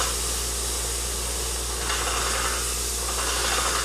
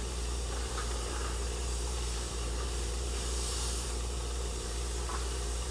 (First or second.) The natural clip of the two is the first